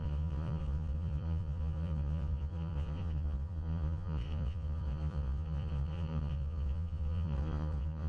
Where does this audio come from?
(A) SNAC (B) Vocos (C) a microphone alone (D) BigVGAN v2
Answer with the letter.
B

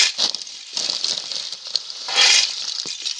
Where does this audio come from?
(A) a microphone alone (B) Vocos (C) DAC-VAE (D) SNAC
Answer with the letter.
A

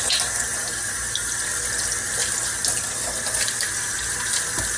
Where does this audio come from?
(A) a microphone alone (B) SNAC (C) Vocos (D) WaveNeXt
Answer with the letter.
A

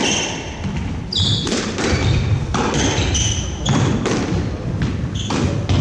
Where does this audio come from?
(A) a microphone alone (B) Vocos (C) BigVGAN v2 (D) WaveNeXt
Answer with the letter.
A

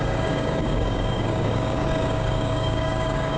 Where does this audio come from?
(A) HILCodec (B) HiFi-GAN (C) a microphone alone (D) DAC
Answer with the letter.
D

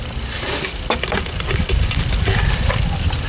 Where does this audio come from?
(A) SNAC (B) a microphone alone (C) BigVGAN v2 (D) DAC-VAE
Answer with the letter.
B